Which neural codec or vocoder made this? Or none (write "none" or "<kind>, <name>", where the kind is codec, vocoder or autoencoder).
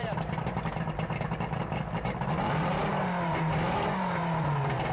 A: vocoder, BigVGAN v2